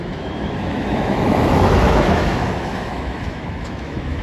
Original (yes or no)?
no